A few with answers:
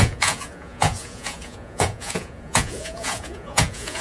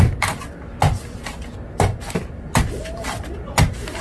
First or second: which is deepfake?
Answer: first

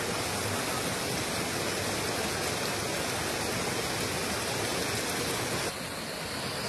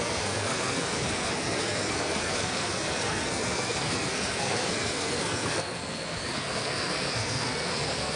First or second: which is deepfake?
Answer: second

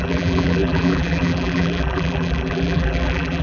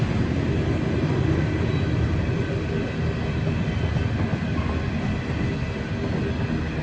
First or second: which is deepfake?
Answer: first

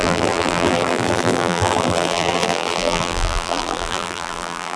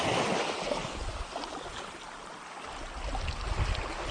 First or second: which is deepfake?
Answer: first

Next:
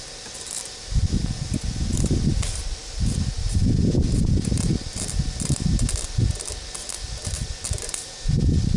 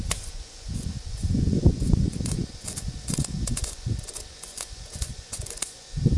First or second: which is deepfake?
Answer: second